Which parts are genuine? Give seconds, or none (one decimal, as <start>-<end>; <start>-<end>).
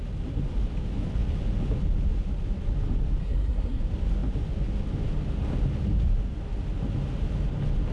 0.0-3.2; 3.8-7.9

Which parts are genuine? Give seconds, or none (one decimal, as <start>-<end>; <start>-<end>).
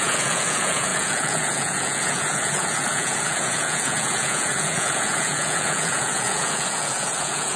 none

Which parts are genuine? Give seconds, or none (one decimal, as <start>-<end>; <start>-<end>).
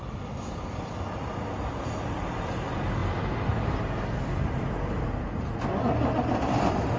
0.0-7.0